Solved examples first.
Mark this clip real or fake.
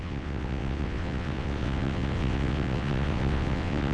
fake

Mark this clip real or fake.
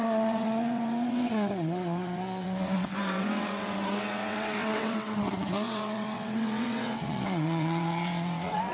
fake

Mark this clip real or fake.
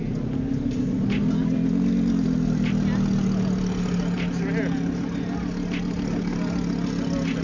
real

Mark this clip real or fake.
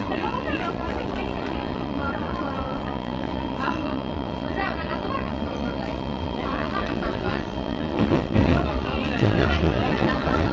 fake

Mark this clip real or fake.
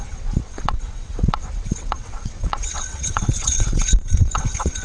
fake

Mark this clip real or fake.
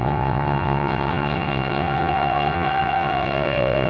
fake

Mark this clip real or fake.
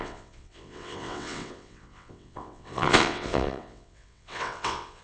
fake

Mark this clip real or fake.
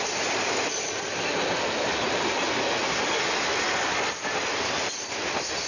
real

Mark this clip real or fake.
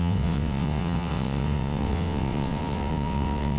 fake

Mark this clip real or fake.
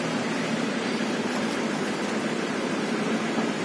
real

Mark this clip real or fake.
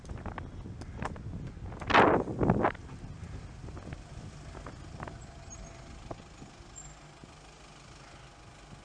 real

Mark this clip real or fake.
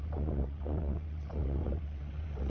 fake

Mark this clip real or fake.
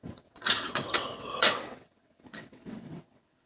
fake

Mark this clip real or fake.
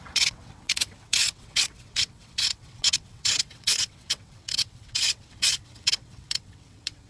fake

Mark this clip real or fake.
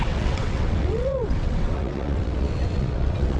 fake